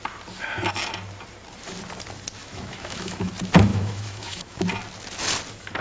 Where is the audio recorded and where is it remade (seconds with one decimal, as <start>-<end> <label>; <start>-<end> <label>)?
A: 0.0-2.4 recorded; 2.4-3.3 remade; 3.3-3.7 recorded; 3.7-4.6 remade; 4.6-5.8 recorded